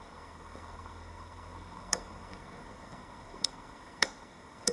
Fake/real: fake